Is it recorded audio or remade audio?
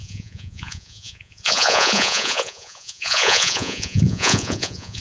remade